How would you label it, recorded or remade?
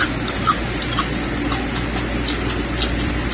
recorded